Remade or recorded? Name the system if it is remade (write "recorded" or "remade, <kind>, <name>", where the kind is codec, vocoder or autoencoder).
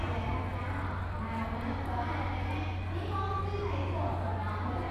recorded